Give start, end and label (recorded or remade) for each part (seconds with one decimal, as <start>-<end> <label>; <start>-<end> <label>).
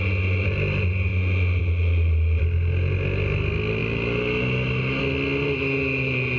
0.0-6.4 recorded